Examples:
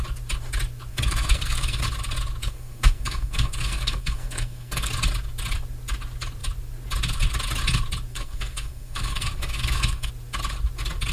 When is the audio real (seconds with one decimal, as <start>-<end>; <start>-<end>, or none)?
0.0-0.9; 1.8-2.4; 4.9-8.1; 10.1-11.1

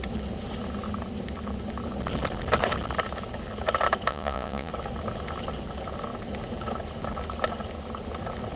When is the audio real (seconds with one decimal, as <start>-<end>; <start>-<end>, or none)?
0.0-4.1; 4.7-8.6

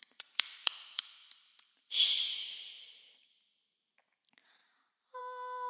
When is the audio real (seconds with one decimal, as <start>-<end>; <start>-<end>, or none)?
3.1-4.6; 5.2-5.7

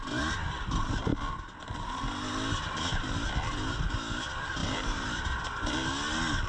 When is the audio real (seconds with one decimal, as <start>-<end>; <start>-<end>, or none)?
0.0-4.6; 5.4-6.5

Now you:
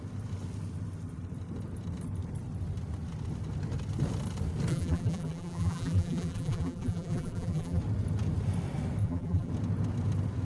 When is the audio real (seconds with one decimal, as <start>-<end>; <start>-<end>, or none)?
0.0-4.7; 7.8-9.0; 9.5-10.4